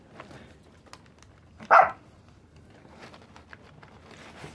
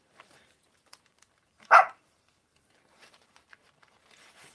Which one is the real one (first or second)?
first